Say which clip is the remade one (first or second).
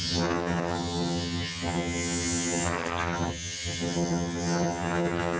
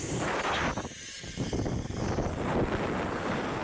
first